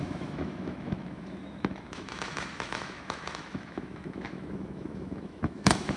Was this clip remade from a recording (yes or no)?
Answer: yes